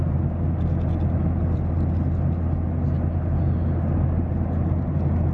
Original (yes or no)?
yes